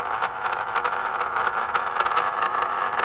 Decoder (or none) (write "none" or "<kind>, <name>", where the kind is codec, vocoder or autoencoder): autoencoder, DAC-VAE